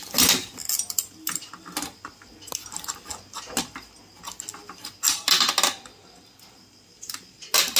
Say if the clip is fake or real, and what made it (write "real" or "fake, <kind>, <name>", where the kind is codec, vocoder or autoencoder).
real